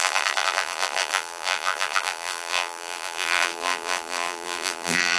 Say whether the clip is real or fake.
fake